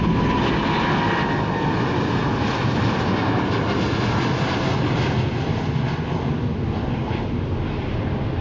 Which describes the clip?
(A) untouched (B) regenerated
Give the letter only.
A